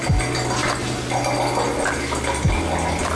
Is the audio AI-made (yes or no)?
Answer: no